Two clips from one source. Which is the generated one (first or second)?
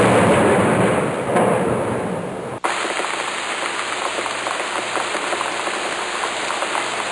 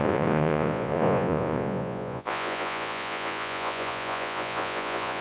second